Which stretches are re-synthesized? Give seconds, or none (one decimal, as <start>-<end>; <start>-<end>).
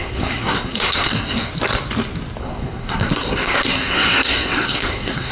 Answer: 0.0-1.5; 2.4-5.3